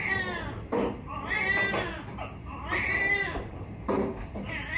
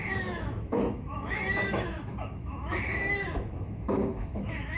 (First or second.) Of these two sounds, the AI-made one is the second